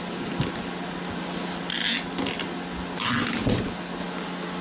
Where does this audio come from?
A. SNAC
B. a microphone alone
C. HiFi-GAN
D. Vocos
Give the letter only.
B